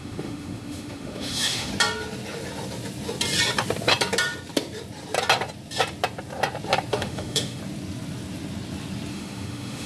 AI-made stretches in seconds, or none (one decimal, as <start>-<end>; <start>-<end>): 0.0-1.7; 6.9-7.6; 9.1-9.9